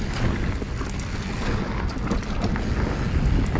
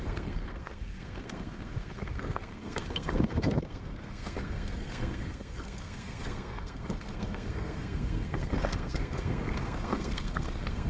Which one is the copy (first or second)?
second